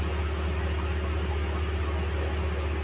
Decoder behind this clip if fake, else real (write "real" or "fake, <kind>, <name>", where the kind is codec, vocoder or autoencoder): real